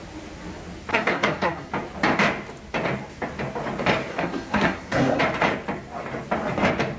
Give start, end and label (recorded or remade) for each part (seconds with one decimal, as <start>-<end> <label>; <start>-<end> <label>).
0.0-0.9 recorded; 0.9-1.7 remade; 1.7-4.1 recorded; 4.1-5.2 remade; 5.2-7.0 recorded